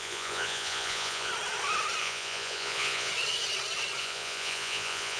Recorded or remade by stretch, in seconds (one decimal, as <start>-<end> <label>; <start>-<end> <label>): 0.0-1.3 remade; 1.3-2.0 recorded; 2.0-3.1 remade; 3.1-4.0 recorded; 4.0-5.2 remade